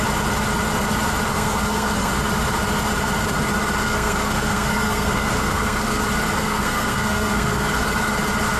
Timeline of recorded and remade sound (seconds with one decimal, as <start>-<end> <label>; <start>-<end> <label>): 0.0-1.3 recorded; 1.3-2.1 remade; 2.1-3.8 recorded; 3.8-6.0 remade; 6.0-6.4 recorded; 6.4-7.7 remade; 7.7-8.6 recorded